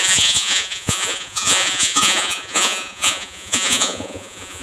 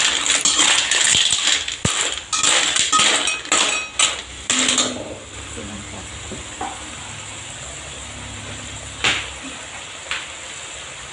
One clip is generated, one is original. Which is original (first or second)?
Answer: second